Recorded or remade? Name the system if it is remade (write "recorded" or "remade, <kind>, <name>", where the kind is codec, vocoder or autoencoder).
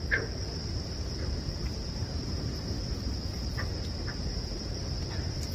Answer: remade, vocoder, BigVGAN v2